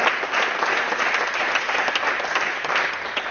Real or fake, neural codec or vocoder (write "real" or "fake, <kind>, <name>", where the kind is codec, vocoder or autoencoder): real